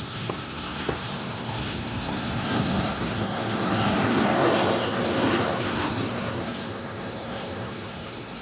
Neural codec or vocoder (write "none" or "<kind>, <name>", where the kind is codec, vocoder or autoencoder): codec, SNAC